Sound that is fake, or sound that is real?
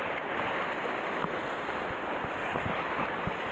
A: real